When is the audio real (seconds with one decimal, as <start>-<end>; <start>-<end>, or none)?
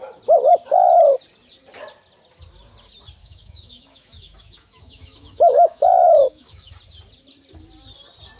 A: 0.0-3.2; 6.7-8.4